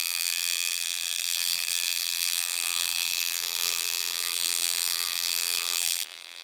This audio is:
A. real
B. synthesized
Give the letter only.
B